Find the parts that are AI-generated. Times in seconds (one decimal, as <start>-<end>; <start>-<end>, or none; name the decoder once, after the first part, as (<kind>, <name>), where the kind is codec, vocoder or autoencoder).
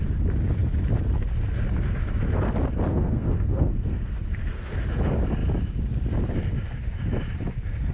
2.9-4.8 (codec, SNAC)